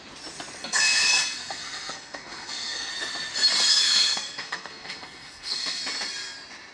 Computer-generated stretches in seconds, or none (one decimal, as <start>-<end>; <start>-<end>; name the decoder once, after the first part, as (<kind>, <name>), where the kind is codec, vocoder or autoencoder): 0.6-2.9 (codec, SNAC); 3.7-5.8